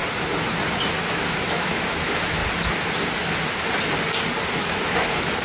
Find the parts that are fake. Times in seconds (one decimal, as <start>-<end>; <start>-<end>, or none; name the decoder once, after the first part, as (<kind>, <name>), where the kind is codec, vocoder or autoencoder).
1.0-2.4 (autoencoder, DAC-VAE); 4.5-5.4